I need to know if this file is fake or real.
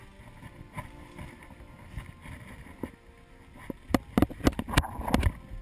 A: real